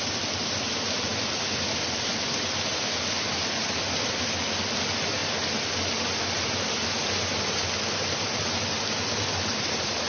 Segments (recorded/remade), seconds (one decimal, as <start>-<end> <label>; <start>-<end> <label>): 0.0-10.1 recorded